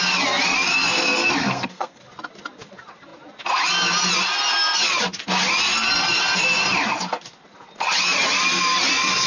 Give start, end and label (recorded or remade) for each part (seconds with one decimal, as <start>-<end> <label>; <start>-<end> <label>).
0.0-1.4 recorded; 1.4-2.0 remade; 2.0-9.3 recorded